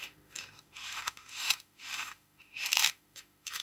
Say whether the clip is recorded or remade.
remade